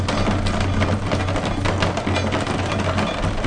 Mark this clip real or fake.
real